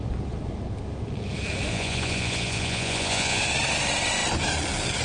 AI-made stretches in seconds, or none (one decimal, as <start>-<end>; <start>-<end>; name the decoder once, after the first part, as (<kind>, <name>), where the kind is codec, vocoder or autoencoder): 1.7-3.4 (vocoder, Vocos)